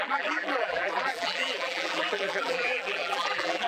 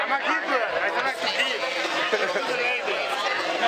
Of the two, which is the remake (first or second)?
first